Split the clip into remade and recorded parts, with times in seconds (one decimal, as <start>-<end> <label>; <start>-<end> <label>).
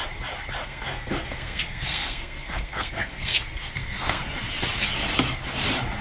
0.0-0.6 recorded; 0.6-4.2 remade; 4.2-6.0 recorded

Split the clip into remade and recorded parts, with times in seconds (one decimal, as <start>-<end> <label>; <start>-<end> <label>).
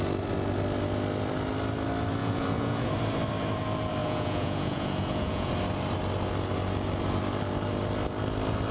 0.0-2.2 recorded; 2.2-2.9 remade; 2.9-4.0 recorded; 4.0-5.5 remade; 5.5-8.7 recorded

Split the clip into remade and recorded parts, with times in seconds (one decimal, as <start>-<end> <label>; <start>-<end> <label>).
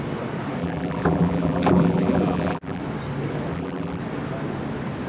0.0-0.6 recorded; 0.6-2.8 remade; 2.8-3.5 recorded; 3.5-4.0 remade; 4.0-5.1 recorded